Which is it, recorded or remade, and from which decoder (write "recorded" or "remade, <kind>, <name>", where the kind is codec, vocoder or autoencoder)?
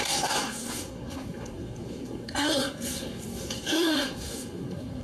remade, codec, SNAC